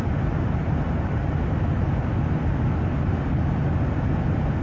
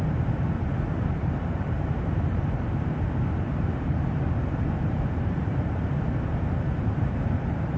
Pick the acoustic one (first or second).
first